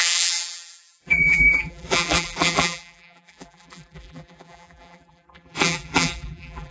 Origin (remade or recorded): remade